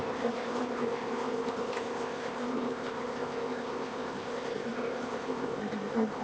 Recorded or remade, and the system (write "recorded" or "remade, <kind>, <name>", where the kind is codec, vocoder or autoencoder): remade, codec, ZipCodec